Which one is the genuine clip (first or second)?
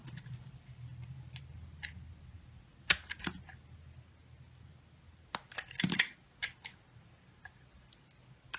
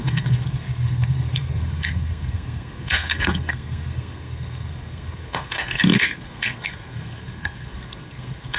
first